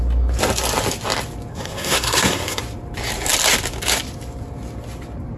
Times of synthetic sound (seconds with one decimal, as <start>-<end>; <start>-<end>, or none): 1.5-2.6